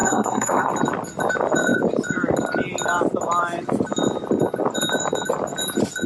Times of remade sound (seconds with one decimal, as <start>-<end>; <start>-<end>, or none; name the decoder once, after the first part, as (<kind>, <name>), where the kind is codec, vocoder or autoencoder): 0.0-0.7 (codec, SNAC)